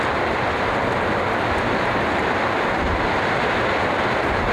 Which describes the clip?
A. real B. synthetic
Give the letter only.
A